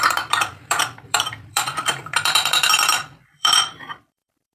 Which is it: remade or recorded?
remade